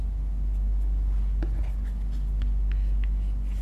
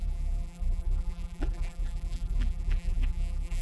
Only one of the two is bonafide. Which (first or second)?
first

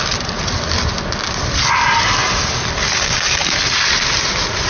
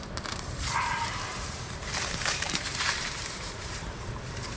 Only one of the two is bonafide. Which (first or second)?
first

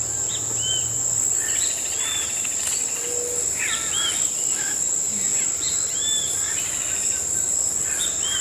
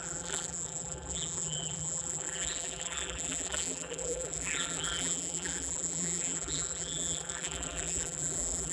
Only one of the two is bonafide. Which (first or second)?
first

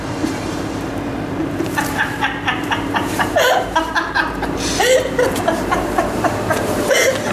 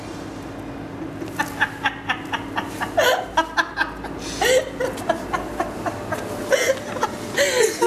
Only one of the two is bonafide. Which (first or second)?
second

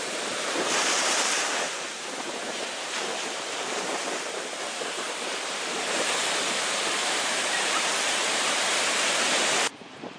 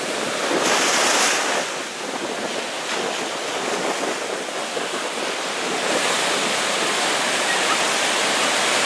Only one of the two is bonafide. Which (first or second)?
second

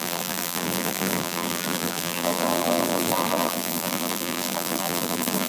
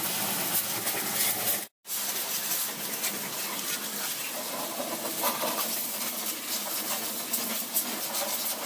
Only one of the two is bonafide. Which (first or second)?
second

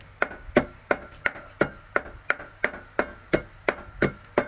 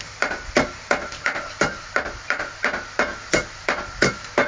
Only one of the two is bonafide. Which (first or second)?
first